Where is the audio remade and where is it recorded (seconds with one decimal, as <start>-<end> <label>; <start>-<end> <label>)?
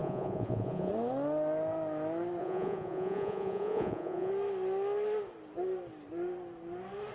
0.0-0.9 remade; 0.9-2.4 recorded; 2.4-4.3 remade; 4.3-7.1 recorded